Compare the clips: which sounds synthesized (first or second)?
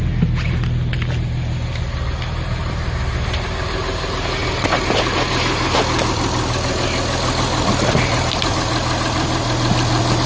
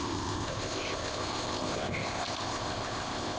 second